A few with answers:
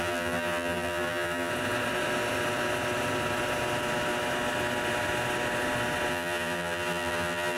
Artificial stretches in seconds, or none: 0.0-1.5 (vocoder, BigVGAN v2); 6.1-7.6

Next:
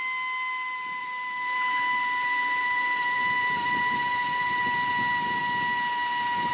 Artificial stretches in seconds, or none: 1.0-4.9 (vocoder, BigVGAN v2)